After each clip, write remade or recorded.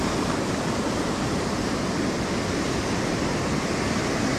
recorded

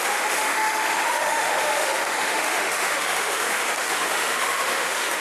remade